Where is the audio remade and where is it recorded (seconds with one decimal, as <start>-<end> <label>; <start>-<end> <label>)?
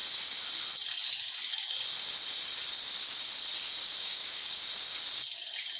0.0-3.8 recorded; 3.8-4.7 remade; 4.7-5.8 recorded